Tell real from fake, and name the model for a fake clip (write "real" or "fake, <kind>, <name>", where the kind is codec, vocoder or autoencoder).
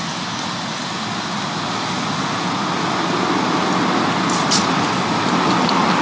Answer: real